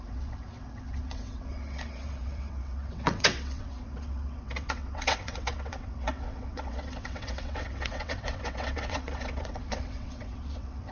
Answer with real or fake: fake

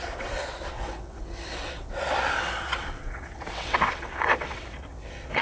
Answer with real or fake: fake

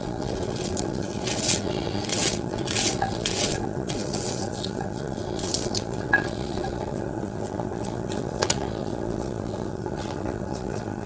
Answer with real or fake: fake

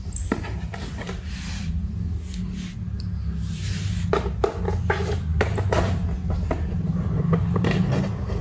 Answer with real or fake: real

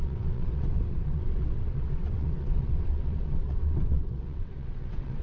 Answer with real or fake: fake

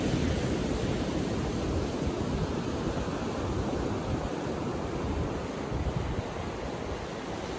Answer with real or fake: real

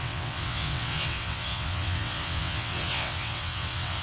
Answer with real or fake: fake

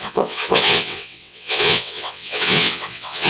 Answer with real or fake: fake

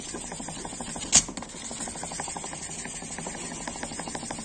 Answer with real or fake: real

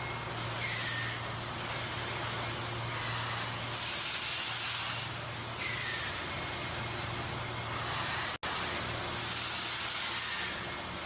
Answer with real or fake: real